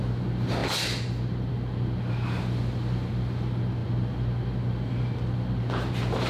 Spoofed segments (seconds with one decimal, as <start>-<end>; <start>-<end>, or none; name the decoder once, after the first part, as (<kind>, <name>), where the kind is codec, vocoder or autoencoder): none